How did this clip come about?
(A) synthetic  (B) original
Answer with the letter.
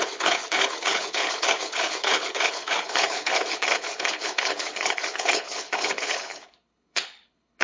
A